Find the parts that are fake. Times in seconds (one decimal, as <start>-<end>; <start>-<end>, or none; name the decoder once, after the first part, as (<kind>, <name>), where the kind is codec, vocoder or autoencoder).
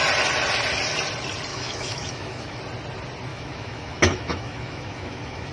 1.5-2.6 (autoencoder, DAC-VAE); 3.3-5.5